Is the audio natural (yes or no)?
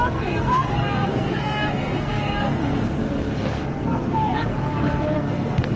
no